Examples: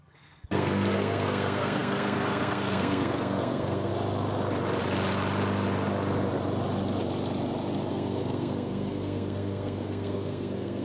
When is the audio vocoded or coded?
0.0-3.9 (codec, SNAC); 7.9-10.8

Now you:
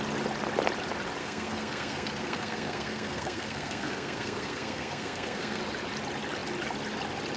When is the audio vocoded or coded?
1.2-5.6 (codec, SNAC)